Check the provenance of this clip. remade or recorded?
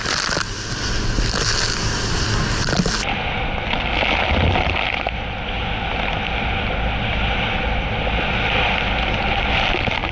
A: recorded